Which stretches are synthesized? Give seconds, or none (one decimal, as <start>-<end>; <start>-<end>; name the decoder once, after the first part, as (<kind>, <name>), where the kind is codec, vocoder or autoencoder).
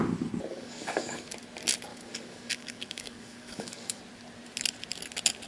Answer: 0.5-1.3 (codec, DAC); 1.9-4.0